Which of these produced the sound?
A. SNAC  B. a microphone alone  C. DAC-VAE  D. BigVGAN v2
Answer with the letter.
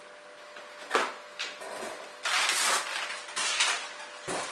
B